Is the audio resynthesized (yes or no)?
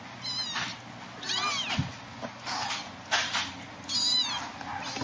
no